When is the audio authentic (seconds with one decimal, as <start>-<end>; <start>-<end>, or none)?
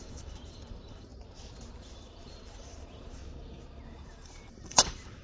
1.1-1.8; 3.2-3.9